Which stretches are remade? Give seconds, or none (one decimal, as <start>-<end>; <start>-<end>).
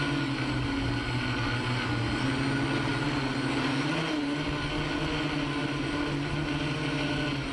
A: 5.6-6.3